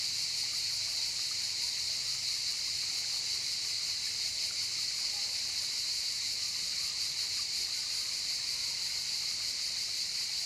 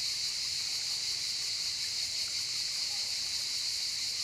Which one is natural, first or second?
first